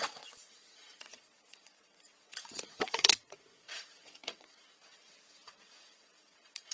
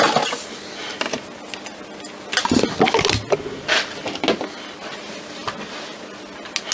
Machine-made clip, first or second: first